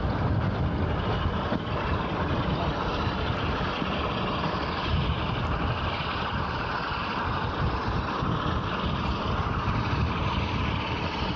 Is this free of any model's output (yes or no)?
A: yes